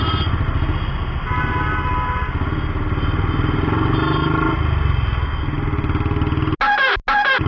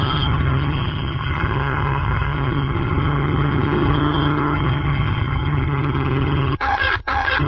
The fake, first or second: second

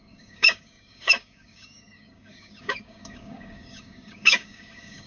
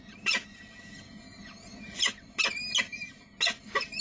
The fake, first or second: first